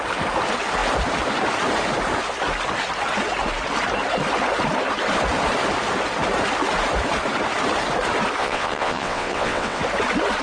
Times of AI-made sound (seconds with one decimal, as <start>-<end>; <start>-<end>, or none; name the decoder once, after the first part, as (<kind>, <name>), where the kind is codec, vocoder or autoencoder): 8.4-9.8 (vocoder, WaveNeXt)